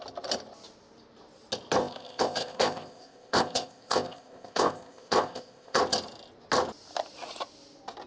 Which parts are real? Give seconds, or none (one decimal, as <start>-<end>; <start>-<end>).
0.0-1.8; 5.8-8.1